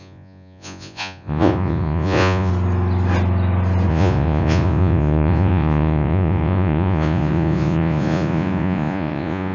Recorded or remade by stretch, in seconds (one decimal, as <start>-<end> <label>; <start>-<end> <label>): 0.0-2.5 remade; 2.5-3.9 recorded; 3.9-9.5 remade